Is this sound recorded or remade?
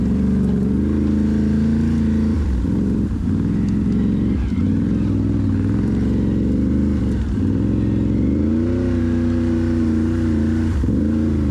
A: remade